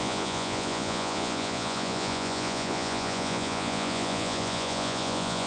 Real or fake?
fake